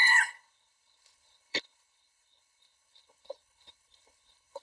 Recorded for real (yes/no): no